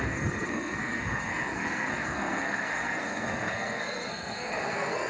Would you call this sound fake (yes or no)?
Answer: yes